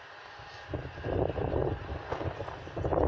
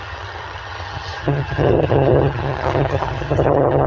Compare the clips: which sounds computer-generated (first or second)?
second